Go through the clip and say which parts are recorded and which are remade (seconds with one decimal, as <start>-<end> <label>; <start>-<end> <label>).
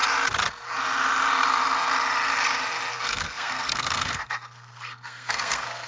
0.0-2.9 recorded; 2.9-5.9 remade